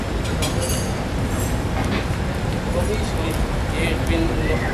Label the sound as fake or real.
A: real